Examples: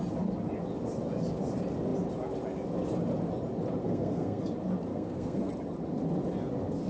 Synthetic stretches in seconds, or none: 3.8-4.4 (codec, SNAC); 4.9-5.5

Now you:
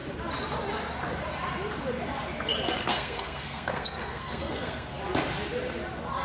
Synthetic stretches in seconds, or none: 2.8-5.0 (codec, SNAC)

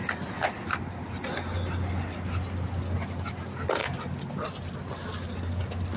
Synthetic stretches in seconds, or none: none

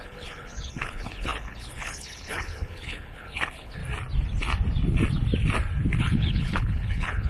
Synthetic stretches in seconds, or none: 0.0-3.8 (codec, HILCodec); 6.0-7.3